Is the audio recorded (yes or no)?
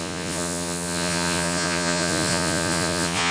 no